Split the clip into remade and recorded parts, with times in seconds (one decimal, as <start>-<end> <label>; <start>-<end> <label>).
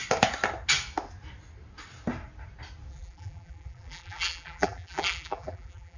0.0-2.9 recorded; 2.9-6.0 remade